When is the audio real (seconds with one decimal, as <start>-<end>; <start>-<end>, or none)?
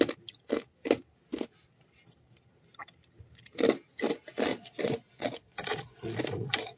0.0-4.5